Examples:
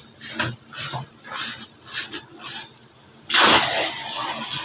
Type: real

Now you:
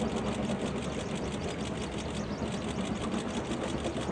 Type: real